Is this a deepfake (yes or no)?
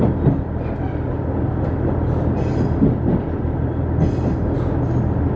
no